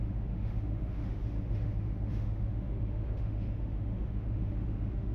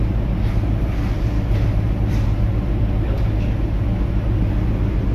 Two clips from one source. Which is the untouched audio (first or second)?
second